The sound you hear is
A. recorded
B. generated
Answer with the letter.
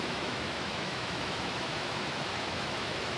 B